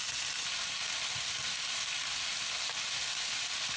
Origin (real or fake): real